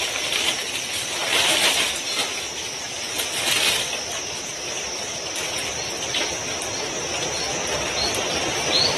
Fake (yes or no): no